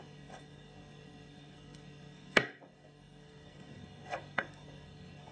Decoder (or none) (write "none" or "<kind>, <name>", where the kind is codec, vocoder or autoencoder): codec, SNAC